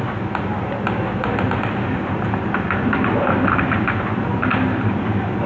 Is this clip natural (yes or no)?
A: yes